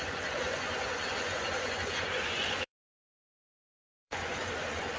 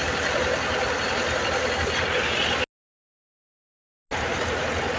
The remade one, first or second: first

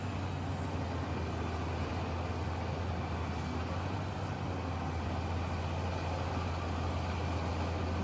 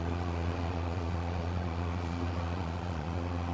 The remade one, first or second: second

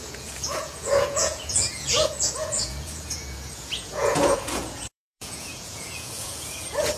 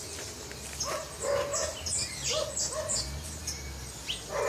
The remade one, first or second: first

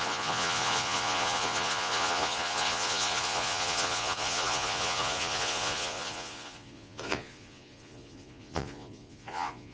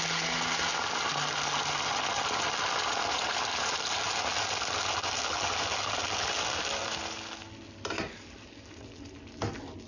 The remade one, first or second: first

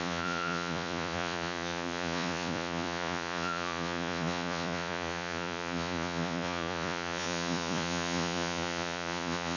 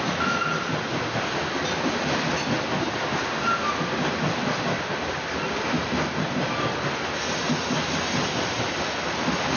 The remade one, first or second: first